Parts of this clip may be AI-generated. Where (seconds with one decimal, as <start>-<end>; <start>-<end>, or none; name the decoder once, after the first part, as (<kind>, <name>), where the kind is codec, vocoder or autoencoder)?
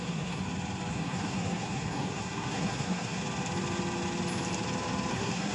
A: 0.0-0.4 (codec, SNAC); 0.9-3.2; 5.1-5.5